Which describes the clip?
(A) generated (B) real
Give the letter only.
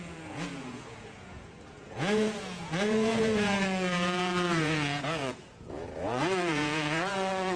A